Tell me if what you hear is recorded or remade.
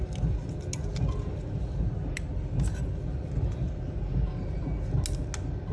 recorded